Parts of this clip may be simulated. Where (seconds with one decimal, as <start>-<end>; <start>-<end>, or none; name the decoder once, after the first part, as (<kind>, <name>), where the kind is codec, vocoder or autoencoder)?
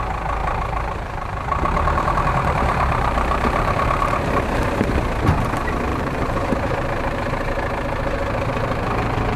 0.4-4.4 (vocoder, BigVGAN v2); 5.9-7.5; 8.2-9.4